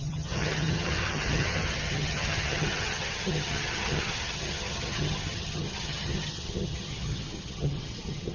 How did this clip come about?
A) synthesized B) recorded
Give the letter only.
A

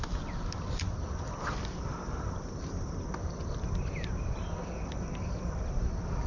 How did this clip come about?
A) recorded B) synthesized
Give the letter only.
A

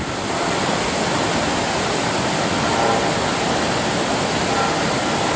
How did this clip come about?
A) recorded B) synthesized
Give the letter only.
A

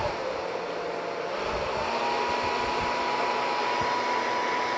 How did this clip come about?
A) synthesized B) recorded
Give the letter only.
B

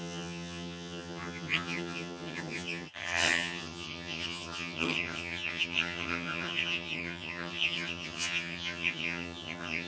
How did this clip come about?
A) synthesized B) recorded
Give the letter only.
A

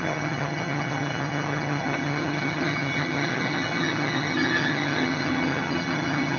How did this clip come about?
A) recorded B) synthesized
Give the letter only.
B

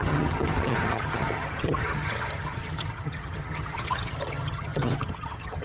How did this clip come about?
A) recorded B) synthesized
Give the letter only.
B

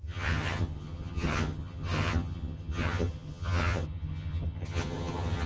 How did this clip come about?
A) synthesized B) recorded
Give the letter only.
A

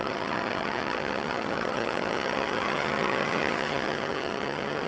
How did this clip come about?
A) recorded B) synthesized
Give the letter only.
B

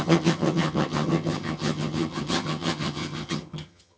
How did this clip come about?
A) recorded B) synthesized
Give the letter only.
B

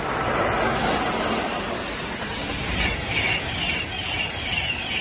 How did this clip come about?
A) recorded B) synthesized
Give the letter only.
A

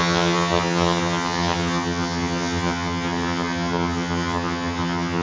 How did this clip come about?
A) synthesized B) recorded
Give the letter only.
A